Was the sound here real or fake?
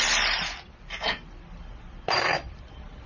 fake